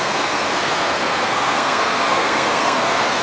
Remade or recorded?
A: remade